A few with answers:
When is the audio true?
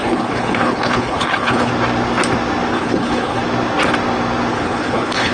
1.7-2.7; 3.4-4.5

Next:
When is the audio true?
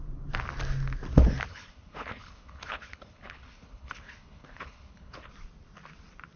0.0-1.5; 5.3-6.4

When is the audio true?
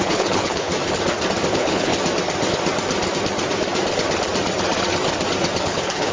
0.7-1.5; 1.9-5.6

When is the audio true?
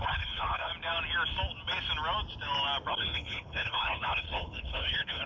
0.7-2.9